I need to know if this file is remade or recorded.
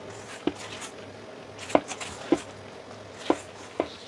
recorded